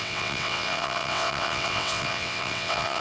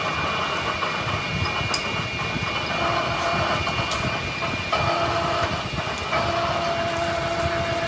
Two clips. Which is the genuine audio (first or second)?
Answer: second